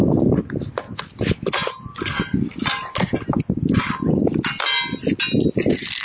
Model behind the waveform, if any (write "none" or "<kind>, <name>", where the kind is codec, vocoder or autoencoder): none